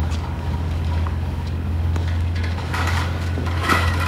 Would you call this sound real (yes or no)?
no